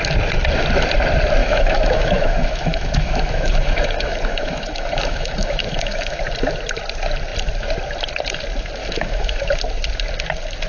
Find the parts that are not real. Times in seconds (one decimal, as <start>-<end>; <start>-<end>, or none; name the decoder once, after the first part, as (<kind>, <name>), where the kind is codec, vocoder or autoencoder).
1.4-6.2 (autoencoder, DAC-VAE); 8.8-9.5

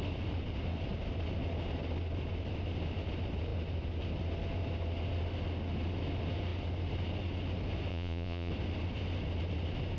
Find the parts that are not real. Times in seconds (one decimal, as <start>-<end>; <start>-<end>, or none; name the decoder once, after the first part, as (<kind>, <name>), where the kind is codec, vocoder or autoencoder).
7.9-8.5 (vocoder, Vocos)